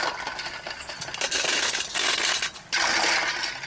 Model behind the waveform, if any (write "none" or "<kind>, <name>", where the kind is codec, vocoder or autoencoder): none